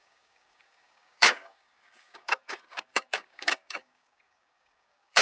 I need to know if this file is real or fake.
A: fake